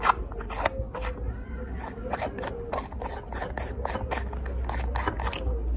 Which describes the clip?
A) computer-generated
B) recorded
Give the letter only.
B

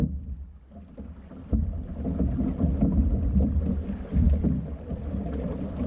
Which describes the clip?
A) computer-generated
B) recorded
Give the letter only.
B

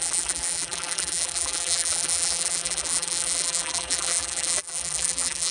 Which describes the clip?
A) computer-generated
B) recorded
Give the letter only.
A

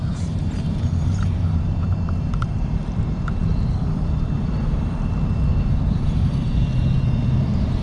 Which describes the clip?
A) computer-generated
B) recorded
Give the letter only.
A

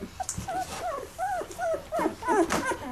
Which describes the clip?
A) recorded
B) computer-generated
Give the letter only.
A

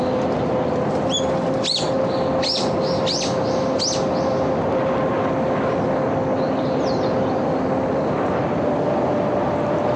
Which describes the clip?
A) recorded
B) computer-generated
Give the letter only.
A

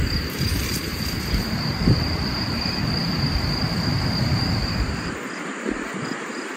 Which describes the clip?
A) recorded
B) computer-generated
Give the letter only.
B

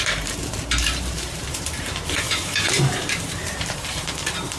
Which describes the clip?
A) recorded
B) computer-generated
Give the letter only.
B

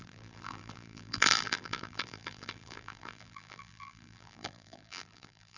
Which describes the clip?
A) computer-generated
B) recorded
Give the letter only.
A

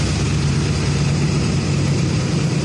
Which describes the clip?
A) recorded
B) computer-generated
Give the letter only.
B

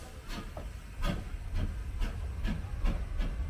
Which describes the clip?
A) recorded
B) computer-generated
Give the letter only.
A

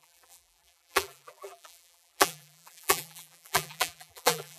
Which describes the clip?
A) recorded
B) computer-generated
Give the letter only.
B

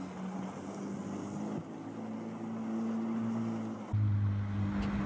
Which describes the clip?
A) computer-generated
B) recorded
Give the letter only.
B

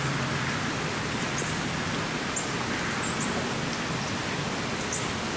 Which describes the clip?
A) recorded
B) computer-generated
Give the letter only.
A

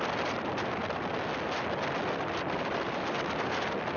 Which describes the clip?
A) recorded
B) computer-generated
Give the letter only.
B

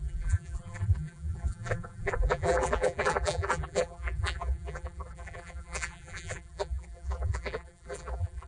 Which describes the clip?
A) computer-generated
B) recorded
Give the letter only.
A